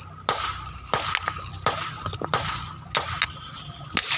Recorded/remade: recorded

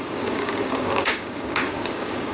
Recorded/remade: remade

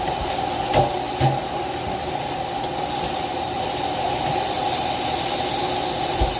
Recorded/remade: recorded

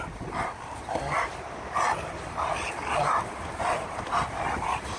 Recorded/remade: recorded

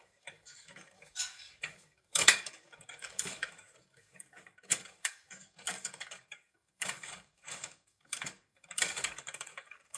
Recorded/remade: remade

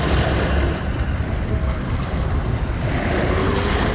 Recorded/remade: recorded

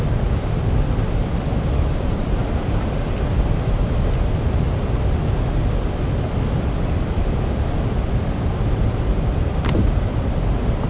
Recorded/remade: recorded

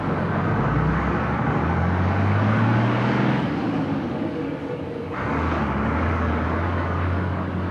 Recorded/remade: remade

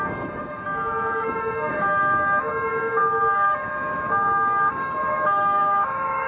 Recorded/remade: remade